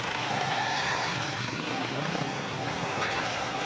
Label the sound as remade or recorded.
remade